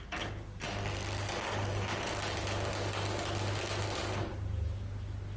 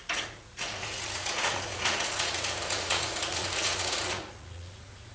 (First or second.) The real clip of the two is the first